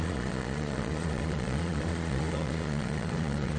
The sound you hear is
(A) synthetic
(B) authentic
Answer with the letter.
A